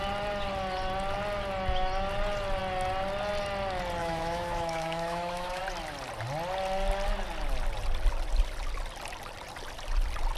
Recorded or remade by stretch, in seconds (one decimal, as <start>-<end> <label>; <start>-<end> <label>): 0.0-4.0 recorded; 4.0-5.6 remade; 5.6-10.4 recorded